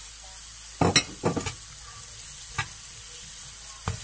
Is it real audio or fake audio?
real